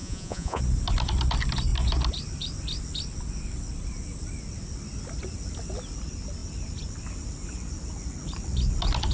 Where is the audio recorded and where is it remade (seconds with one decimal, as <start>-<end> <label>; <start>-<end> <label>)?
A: 0.0-0.6 remade; 0.6-9.1 recorded